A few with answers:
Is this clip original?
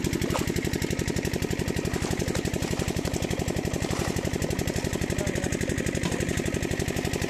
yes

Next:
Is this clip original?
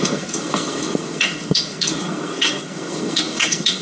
no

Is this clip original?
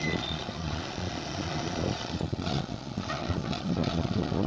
no